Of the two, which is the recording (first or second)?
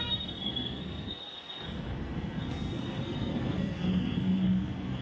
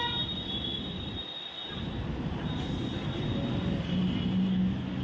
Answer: second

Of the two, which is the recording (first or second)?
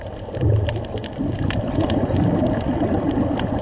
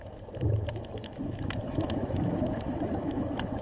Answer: first